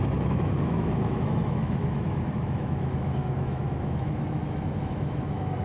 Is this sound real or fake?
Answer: fake